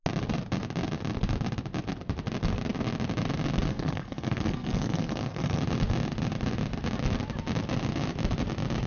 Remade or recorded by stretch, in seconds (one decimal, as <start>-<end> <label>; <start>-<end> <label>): 0.0-3.7 recorded; 3.7-5.6 remade; 5.6-8.9 recorded